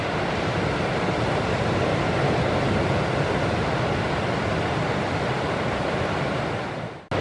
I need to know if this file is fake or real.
real